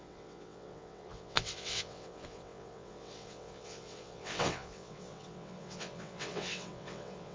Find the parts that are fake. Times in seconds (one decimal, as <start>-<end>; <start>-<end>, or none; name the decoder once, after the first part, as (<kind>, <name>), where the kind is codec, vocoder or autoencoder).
0.0-7.3 (vocoder, WaveNeXt)